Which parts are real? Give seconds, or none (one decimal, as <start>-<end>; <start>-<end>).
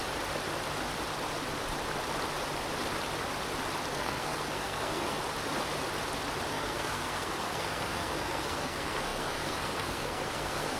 0.0-3.9; 5.2-6.5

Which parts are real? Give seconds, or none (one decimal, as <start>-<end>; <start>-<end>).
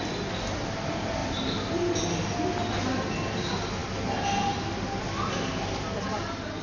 0.0-6.6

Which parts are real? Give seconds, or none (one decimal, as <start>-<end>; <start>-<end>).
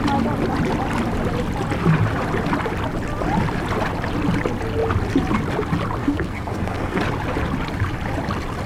0.0-6.0; 7.0-8.7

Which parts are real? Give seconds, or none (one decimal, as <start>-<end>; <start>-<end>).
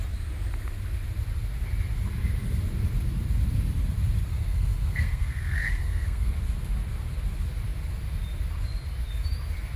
0.0-4.3; 6.3-9.8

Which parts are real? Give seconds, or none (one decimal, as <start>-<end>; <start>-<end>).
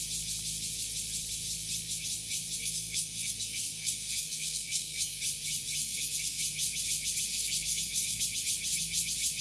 0.0-2.6; 5.2-5.8; 6.4-7.3; 8.2-9.4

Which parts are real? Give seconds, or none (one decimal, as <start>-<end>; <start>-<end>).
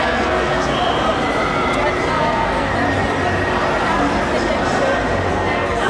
0.7-2.1; 2.7-5.3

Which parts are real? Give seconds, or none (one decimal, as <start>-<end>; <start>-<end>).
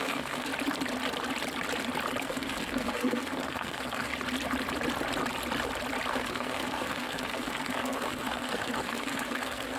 0.5-2.2; 4.1-6.1